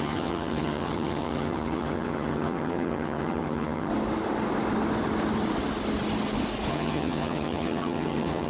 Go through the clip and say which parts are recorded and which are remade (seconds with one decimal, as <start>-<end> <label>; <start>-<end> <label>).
0.0-3.9 remade; 3.9-6.7 recorded; 6.7-8.5 remade